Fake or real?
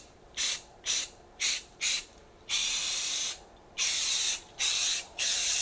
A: fake